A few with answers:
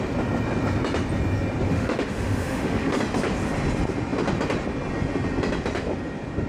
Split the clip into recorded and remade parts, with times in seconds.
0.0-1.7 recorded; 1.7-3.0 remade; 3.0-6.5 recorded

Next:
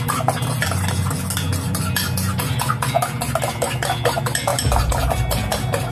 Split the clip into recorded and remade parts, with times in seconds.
0.0-5.9 recorded

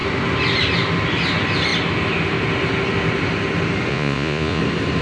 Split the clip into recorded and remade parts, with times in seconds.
0.0-3.9 recorded; 3.9-4.6 remade; 4.6-5.0 recorded

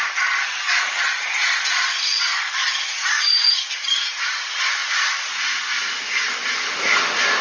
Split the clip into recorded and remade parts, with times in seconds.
0.0-0.4 recorded; 0.4-1.0 remade; 1.0-2.3 recorded; 2.3-4.1 remade; 4.1-7.4 recorded

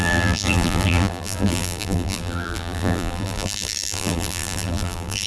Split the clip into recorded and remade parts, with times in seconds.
0.0-5.3 remade

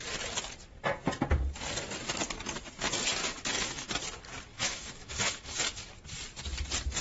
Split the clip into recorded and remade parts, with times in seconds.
0.0-3.2 recorded; 3.2-3.9 remade; 3.9-4.5 recorded; 4.5-5.9 remade; 5.9-7.0 recorded

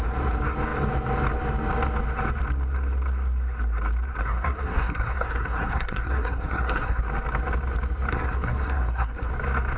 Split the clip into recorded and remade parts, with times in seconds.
0.0-4.2 recorded; 4.2-7.0 remade; 7.0-8.1 recorded; 8.1-9.3 remade; 9.3-9.8 recorded